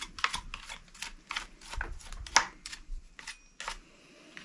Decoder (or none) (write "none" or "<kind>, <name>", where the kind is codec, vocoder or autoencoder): none